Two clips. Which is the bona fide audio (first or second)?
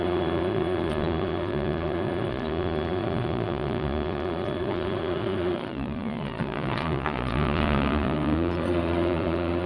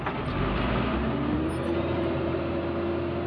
second